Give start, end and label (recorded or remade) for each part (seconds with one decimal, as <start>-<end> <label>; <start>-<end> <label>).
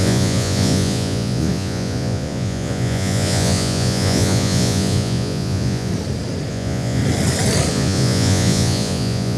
0.0-5.9 remade; 5.9-6.5 recorded; 6.5-7.0 remade; 7.0-7.7 recorded; 7.7-9.4 remade